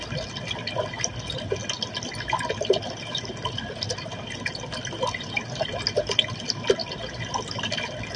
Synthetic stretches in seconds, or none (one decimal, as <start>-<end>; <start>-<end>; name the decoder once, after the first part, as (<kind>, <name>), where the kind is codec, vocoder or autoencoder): none